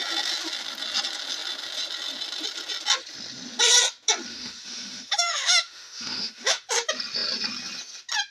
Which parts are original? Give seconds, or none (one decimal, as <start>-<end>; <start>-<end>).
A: 0.0-4.3; 6.7-8.3